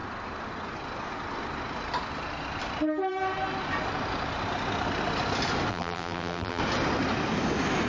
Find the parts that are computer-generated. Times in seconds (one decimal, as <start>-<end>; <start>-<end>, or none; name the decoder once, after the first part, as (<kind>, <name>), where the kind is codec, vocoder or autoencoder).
5.7-6.6 (vocoder, BigVGAN v2)